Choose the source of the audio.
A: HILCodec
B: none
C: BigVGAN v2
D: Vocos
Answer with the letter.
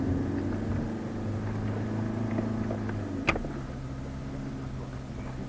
B